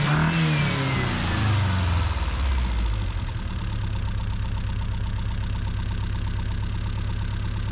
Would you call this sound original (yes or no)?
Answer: yes